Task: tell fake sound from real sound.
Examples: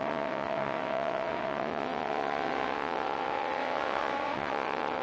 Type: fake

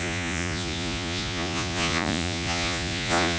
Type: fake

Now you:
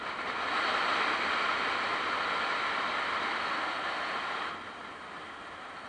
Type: real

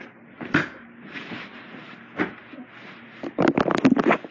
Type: real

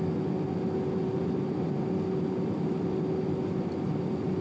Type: real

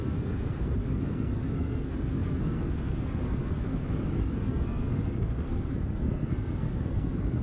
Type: fake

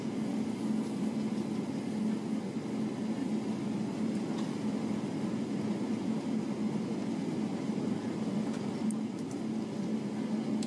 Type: real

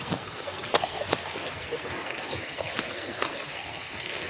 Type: fake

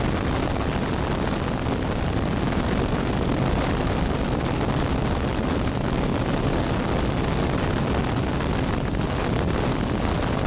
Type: real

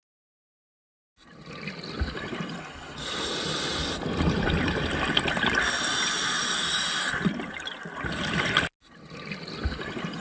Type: real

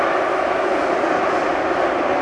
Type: real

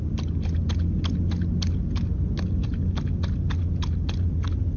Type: real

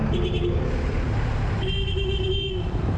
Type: real